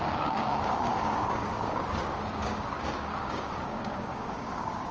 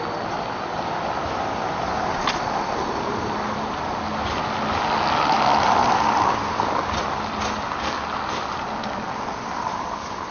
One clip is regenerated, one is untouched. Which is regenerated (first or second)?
first